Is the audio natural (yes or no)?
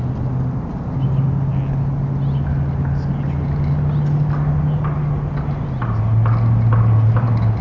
yes